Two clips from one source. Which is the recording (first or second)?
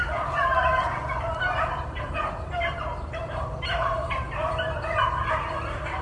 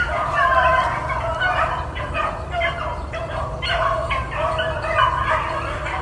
second